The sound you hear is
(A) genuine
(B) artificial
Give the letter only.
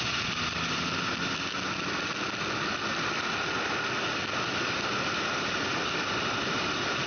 A